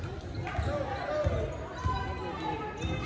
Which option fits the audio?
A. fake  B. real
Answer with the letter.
B